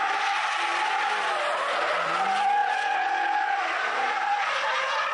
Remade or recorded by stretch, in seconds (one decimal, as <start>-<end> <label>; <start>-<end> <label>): 0.0-2.6 recorded; 2.6-3.1 remade; 3.1-5.1 recorded